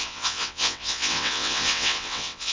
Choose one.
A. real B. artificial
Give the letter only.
B